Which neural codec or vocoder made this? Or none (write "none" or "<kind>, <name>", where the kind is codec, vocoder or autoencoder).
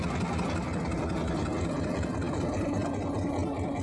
none